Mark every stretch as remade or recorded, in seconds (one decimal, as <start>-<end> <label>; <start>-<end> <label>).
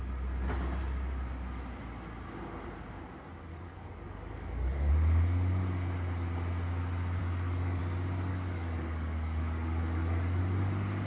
0.0-3.5 recorded; 3.5-4.9 remade; 4.9-7.2 recorded; 7.2-7.8 remade; 7.8-8.3 recorded; 8.3-10.4 remade; 10.4-11.1 recorded